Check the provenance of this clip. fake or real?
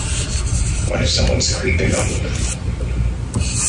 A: real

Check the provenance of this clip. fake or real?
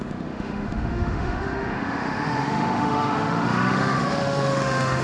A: fake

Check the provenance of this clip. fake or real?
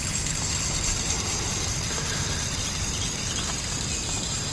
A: fake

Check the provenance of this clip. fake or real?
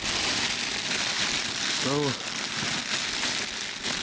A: real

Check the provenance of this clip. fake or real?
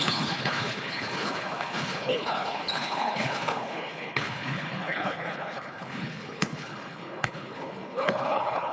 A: fake